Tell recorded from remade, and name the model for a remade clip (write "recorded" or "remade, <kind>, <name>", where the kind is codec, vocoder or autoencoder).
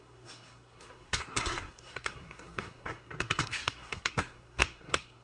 remade, codec, SNAC